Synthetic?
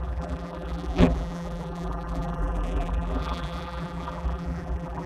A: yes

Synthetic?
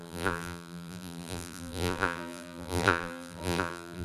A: yes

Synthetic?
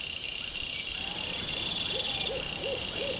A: yes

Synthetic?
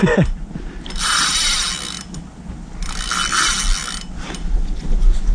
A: no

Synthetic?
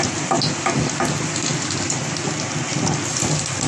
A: no